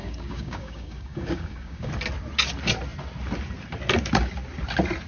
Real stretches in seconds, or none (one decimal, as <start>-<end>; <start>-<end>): 1.9-5.1